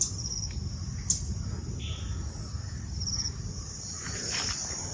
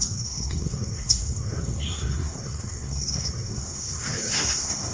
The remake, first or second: second